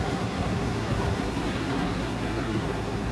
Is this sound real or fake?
fake